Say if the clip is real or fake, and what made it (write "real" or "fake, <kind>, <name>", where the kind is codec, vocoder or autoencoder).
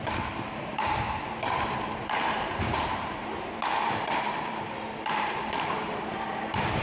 fake, vocoder, BigVGAN v2